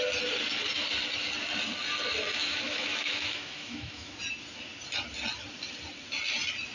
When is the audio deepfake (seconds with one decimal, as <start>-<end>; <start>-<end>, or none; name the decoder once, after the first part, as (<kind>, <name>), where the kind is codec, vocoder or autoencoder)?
2.4-4.2 (autoencoder, DAC-VAE)